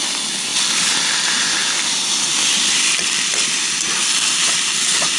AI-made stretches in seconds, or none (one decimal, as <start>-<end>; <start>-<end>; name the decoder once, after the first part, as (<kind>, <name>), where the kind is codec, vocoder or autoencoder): 0.5-1.0 (vocoder, BigVGAN v2); 1.6-4.7